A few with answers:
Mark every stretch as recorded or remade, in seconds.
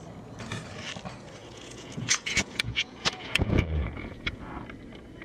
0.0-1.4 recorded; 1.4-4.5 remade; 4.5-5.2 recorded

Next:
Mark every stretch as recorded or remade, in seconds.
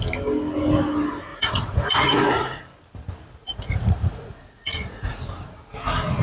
0.0-1.3 recorded; 1.3-2.6 remade; 2.6-3.4 recorded; 3.4-5.2 remade; 5.2-6.2 recorded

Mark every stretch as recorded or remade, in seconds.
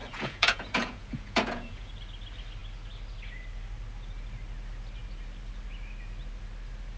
0.0-1.9 remade; 1.9-7.0 recorded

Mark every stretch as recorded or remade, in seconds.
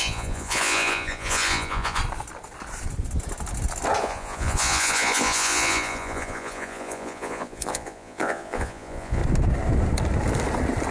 0.0-2.0 remade; 2.0-4.0 recorded; 4.0-9.2 remade; 9.2-10.9 recorded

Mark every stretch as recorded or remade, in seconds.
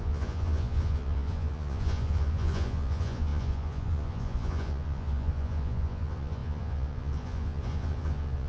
0.0-8.5 remade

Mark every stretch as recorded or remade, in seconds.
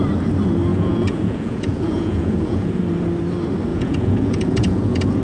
0.0-0.7 recorded; 0.7-2.8 remade; 2.8-3.7 recorded; 3.7-5.2 remade